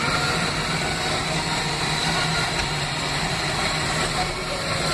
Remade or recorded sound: remade